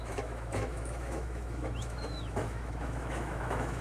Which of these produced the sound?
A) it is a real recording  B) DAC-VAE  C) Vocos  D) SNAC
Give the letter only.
B